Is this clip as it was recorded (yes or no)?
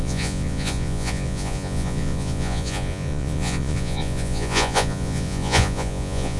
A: no